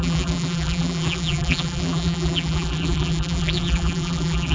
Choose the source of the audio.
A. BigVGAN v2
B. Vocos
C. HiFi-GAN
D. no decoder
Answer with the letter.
A